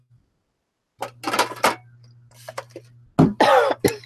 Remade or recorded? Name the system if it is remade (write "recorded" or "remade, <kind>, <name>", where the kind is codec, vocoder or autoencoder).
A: recorded